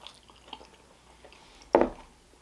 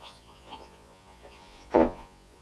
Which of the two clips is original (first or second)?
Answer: first